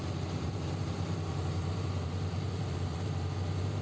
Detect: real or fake fake